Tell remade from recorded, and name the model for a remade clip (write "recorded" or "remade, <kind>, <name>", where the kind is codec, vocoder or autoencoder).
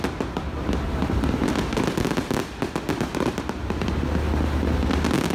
recorded